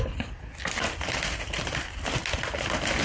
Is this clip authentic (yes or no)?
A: yes